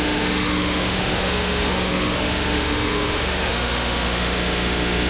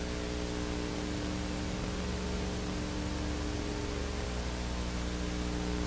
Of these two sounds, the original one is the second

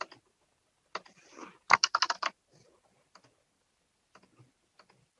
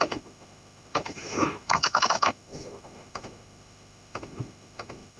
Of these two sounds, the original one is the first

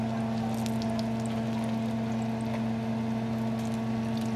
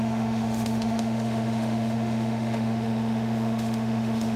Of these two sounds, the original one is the first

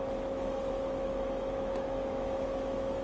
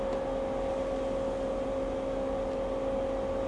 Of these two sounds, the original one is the second